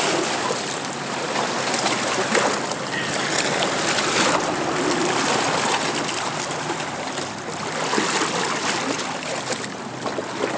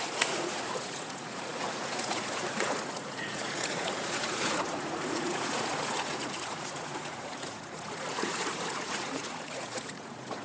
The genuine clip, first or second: first